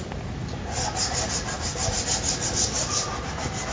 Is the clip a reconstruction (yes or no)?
no